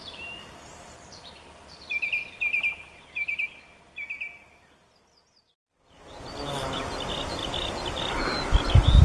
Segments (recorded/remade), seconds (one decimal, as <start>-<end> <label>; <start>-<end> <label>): 0.0-3.6 remade; 3.6-7.4 recorded; 7.4-9.0 remade